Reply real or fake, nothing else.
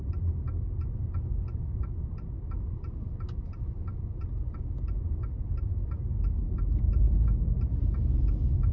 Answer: real